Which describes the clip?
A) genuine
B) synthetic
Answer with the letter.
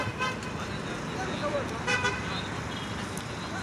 A